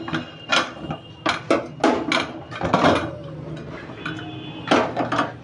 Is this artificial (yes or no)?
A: no